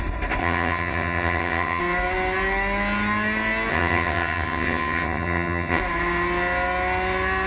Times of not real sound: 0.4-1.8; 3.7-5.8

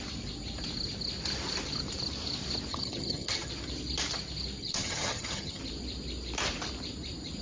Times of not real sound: 2.7-3.5; 4.6-5.6

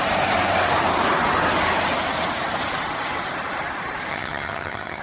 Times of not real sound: 4.1-5.0

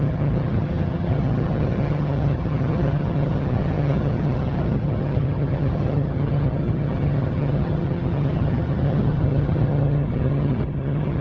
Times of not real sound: 0.0-11.2

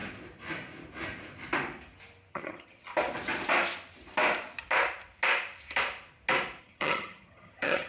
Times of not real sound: 2.3-2.9; 6.6-7.9

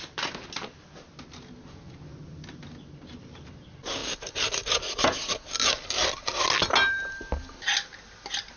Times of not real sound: none

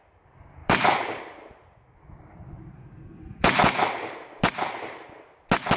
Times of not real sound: none

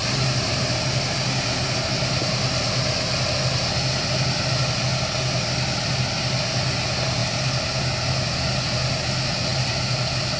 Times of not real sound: none